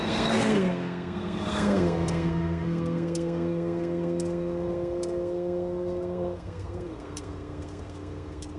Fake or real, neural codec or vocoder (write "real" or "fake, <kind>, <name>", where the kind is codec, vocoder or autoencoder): fake, codec, SNAC